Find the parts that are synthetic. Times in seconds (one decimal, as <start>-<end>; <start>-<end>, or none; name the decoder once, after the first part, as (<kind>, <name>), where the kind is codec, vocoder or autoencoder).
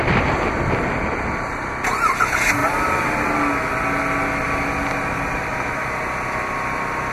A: none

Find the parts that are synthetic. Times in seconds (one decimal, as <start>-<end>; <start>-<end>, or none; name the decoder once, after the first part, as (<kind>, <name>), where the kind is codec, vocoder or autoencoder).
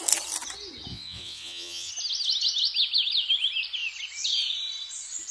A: 0.9-1.9 (vocoder, WaveNeXt)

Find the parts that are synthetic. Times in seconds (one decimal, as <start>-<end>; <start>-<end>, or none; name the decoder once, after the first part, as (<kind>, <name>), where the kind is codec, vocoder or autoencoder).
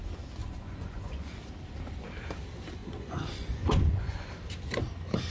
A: 0.4-1.3 (vocoder, Vocos); 2.8-4.3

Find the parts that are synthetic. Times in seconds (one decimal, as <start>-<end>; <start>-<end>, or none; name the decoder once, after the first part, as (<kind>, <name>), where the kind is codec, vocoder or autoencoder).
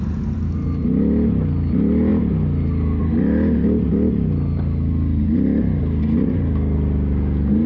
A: none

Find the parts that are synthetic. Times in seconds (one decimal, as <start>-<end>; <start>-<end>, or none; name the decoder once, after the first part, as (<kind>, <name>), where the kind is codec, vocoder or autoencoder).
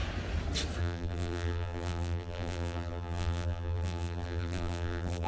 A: 0.8-5.3 (vocoder, BigVGAN v2)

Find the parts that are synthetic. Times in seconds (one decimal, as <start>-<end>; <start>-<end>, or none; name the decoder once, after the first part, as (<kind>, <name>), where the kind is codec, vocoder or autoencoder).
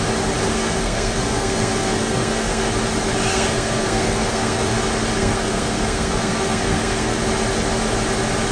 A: 0.5-2.7 (codec, SNAC); 3.3-4.8; 5.2-7.2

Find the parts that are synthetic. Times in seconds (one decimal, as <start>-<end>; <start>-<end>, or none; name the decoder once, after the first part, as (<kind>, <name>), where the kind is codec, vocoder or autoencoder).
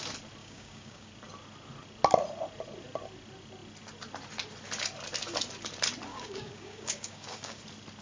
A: 0.4-1.1 (codec, DAC); 6.1-7.6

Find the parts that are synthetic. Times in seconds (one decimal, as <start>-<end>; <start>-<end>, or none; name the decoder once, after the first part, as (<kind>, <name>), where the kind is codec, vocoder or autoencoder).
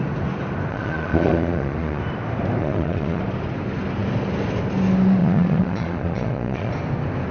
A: 0.7-2.0 (vocoder, Vocos); 2.6-3.2; 5.2-6.7